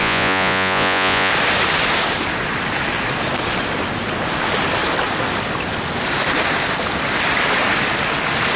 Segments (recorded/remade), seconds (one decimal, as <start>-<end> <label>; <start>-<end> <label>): 0.0-1.3 remade; 1.3-8.6 recorded